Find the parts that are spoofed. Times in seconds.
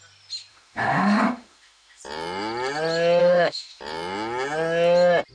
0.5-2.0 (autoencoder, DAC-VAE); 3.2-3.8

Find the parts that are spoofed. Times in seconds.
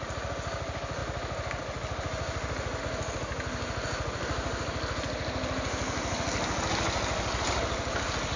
none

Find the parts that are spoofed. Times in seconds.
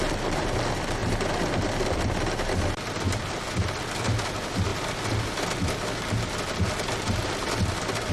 none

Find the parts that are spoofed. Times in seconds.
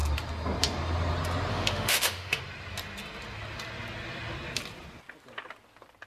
1.5-2.4 (autoencoder, DAC-VAE)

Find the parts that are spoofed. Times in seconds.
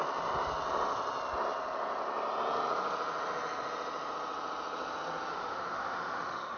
5.3-6.6 (autoencoder, DAC-VAE)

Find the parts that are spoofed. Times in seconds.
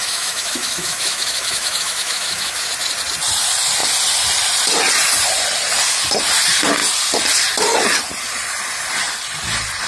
0.0-2.7 (autoencoder, DAC-VAE)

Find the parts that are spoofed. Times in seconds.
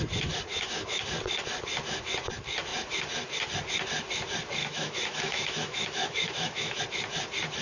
0.5-1.0 (autoencoder, DAC-VAE); 4.6-6.8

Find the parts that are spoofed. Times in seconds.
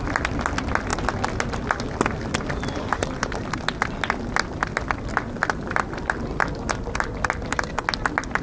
none